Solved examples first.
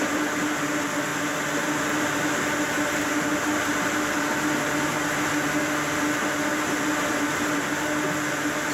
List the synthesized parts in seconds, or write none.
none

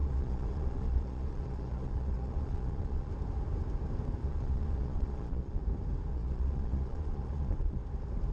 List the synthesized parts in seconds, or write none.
0.0-3.1 (vocoder, Vocos); 4.2-5.6; 6.1-7.8

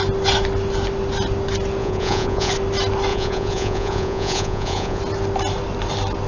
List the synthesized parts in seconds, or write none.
1.8-2.5 (vocoder, Vocos); 3.1-5.0

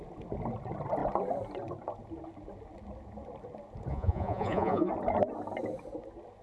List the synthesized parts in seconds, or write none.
3.9-4.9 (vocoder, Vocos)